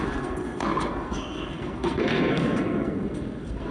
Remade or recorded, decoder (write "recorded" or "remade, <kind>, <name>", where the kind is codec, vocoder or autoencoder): remade, codec, SNAC